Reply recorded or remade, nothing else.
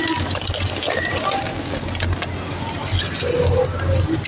recorded